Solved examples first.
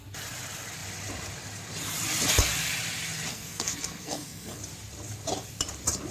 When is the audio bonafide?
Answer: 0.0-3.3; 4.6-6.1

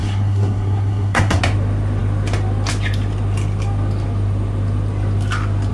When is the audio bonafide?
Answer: 1.4-5.7

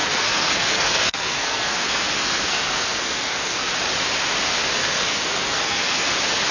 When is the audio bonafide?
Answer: 3.7-4.8; 6.1-6.5

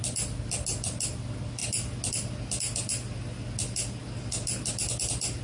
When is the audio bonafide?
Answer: 0.0-5.4